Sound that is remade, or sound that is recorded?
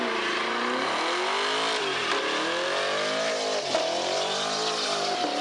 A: recorded